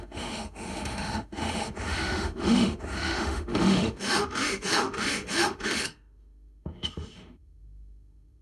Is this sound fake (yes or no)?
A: yes